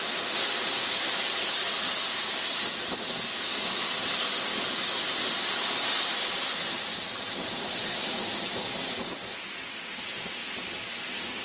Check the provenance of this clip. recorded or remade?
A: recorded